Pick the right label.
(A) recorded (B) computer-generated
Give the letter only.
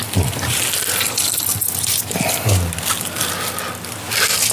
A